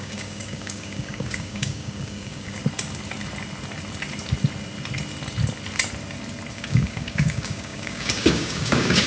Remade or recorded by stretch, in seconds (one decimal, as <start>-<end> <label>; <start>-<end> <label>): 0.0-2.6 remade; 2.6-6.5 recorded; 6.5-9.1 remade